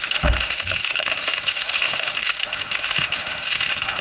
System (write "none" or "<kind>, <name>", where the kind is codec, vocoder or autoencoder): autoencoder, DAC-VAE